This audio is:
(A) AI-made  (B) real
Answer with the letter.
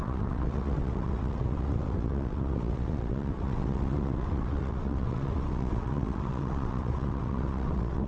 A